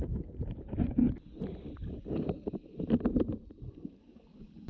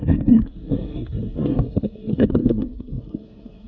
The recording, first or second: first